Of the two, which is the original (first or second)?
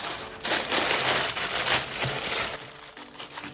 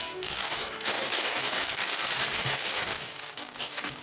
first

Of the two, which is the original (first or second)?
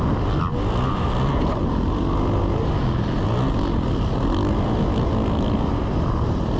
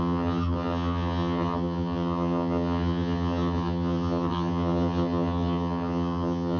first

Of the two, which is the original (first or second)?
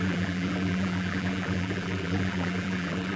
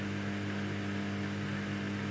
second